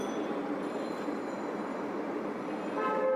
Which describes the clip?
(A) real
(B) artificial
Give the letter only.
A